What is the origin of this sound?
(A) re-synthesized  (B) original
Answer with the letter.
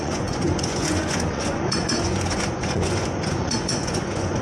A